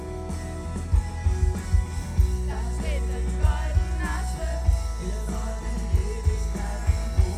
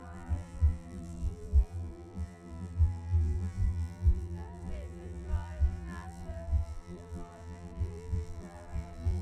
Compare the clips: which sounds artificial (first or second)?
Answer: second